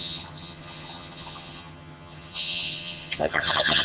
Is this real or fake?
fake